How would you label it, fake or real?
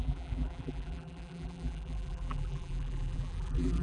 fake